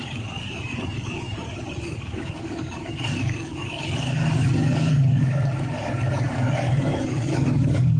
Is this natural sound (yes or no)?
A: no